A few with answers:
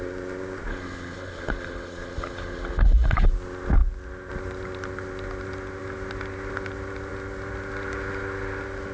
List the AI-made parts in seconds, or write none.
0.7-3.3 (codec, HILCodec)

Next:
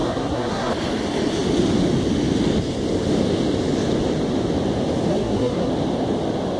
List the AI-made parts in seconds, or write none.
0.0-0.7 (codec, SNAC); 5.1-5.7

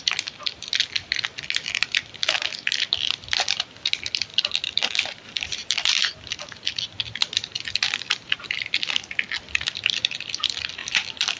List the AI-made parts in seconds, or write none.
4.3-6.4 (vocoder, BigVGAN v2); 10.8-11.4

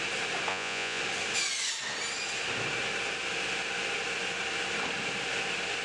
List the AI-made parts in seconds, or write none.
0.5-1.0 (vocoder, Vocos)

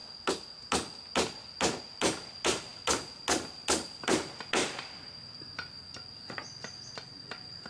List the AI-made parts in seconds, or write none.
none

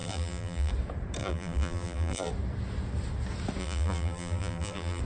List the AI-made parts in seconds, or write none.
0.0-0.7 (vocoder, BigVGAN v2); 1.2-2.3; 3.6-5.0

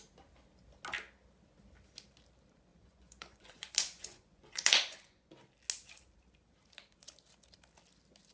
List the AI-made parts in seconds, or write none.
2.7-5.3 (vocoder, Vocos)

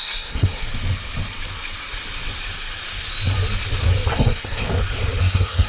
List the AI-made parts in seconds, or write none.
0.0-0.7 (codec, SNAC); 4.1-4.6; 5.2-5.7